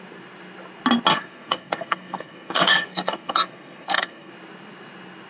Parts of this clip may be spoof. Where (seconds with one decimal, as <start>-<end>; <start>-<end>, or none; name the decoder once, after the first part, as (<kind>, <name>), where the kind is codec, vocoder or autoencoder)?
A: 1.1-4.3 (codec, SNAC)